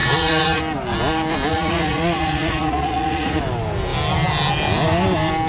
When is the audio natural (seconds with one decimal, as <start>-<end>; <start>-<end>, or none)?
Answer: 0.6-1.5; 3.4-5.5